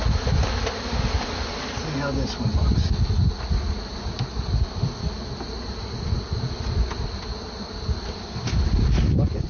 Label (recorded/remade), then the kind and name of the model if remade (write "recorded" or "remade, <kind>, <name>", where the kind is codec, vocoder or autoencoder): recorded